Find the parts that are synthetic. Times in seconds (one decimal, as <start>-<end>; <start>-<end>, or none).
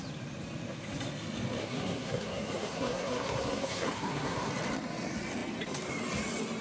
1.6-4.5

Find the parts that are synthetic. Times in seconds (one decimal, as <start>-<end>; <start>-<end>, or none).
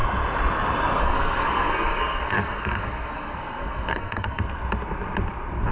1.0-4.4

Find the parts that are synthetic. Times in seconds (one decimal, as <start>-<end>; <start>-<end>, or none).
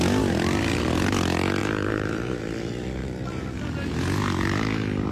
1.6-2.4; 3.0-3.5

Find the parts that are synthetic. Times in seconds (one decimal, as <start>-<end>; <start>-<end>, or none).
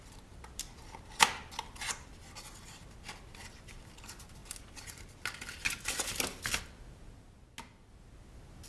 none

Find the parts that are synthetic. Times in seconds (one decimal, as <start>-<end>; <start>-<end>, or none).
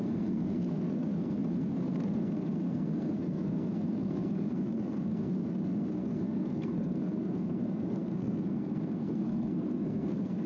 0.0-10.5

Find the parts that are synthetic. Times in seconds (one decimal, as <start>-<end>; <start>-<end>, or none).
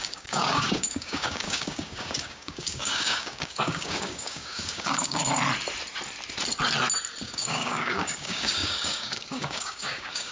0.0-5.2; 7.2-10.3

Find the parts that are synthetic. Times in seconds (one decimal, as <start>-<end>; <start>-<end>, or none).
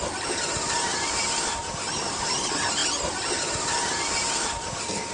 none